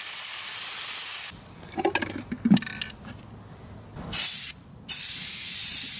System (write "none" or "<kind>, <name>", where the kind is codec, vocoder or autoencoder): none